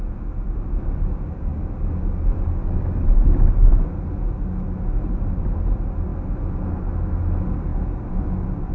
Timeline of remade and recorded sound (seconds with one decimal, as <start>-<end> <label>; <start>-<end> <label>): 0.0-8.7 recorded